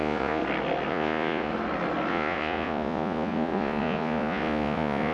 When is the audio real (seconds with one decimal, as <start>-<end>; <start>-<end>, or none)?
0.4-0.9; 1.5-2.1